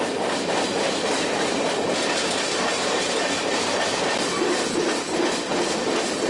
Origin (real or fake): real